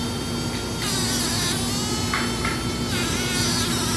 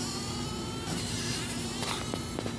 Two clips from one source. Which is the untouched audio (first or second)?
first